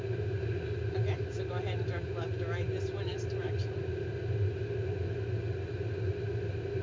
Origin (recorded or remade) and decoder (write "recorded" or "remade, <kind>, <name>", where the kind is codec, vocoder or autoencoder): recorded